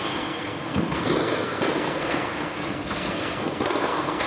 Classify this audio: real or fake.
fake